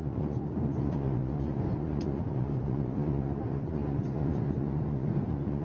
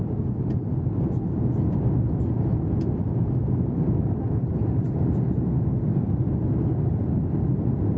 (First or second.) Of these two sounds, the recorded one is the second